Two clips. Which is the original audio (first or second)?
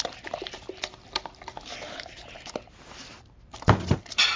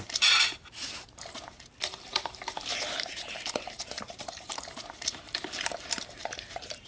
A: first